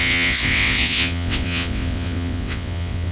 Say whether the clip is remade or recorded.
remade